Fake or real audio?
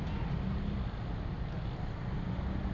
real